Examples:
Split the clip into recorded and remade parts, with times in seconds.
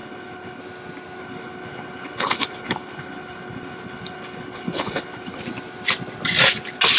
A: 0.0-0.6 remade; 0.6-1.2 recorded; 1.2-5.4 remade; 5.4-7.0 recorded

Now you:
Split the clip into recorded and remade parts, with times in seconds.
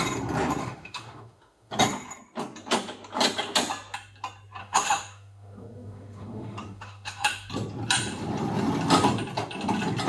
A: 0.0-0.6 recorded; 0.6-1.7 remade; 1.7-4.6 recorded; 4.6-7.5 remade; 7.5-10.1 recorded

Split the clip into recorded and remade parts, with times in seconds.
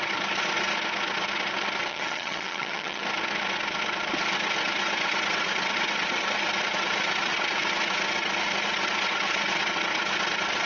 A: 0.0-1.9 recorded; 1.9-3.0 remade; 3.0-10.7 recorded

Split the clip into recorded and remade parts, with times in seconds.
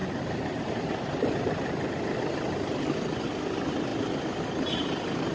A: 0.0-1.9 remade; 1.9-5.3 recorded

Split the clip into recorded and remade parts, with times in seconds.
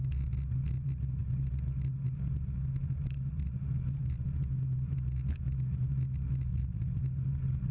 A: 0.0-6.5 recorded; 6.5-7.0 remade; 7.0-7.7 recorded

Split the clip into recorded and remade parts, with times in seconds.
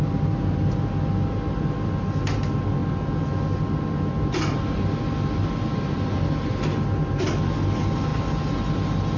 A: 0.0-9.2 recorded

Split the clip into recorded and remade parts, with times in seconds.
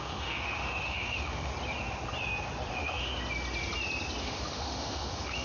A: 0.0-1.5 remade; 1.5-2.7 recorded; 2.7-3.1 remade; 3.1-4.2 recorded; 4.2-5.4 remade